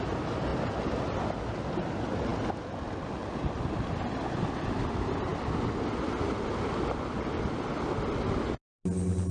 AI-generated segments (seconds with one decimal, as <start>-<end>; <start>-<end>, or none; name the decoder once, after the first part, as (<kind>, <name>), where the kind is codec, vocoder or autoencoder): none